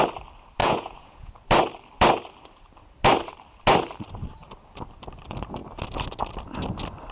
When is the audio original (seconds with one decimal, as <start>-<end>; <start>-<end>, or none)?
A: 0.0-0.6; 1.3-7.1